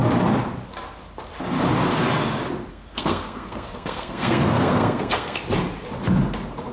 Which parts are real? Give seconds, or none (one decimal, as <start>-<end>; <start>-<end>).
0.0-2.7; 5.4-6.7